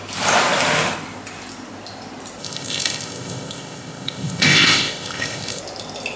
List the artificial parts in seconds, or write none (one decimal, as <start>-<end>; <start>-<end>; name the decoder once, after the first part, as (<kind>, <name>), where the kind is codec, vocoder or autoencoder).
2.4-5.6 (codec, ZipCodec)